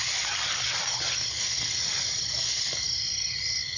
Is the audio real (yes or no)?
yes